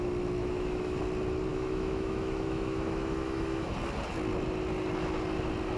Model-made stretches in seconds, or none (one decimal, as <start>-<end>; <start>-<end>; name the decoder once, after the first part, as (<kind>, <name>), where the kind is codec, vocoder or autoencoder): 0.4-1.0 (autoencoder, DAC-VAE); 1.5-3.7

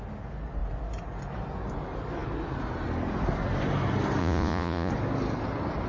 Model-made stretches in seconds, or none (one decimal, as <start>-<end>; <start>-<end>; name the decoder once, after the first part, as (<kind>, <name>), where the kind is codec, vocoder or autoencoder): 4.2-4.9 (vocoder, Vocos)

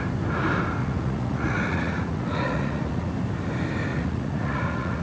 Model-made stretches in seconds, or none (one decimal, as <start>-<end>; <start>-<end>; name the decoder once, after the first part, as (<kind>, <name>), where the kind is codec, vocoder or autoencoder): 0.8-3.1 (vocoder, Vocos); 3.9-5.0

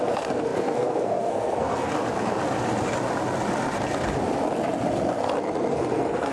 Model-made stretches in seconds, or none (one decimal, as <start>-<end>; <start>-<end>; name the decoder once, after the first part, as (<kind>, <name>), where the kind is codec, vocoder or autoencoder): 0.0-1.9 (codec, SNAC); 5.7-6.3